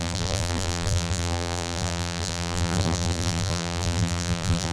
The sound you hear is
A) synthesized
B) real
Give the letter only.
A